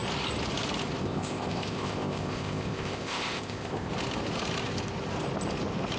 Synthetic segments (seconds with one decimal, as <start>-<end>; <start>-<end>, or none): 1.0-3.9